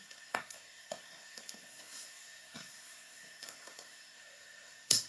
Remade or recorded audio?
remade